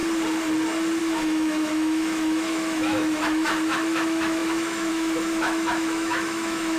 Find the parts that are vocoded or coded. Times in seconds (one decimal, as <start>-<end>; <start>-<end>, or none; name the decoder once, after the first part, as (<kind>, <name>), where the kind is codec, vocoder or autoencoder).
1.0-6.8 (autoencoder, DAC-VAE)